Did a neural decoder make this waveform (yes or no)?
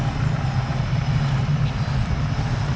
no